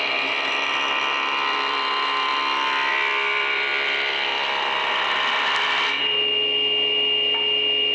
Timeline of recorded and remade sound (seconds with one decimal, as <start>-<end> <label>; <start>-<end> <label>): 0.0-7.9 remade